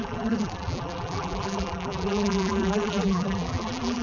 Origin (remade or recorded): remade